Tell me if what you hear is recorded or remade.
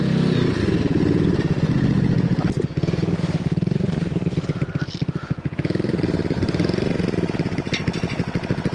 recorded